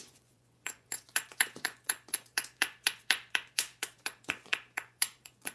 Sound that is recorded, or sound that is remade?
remade